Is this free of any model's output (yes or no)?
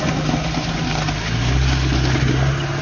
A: yes